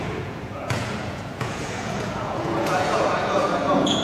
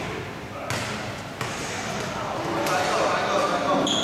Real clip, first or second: second